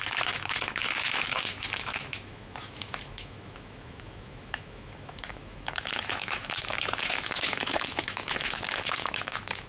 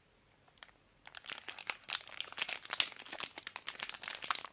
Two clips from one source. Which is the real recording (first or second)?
second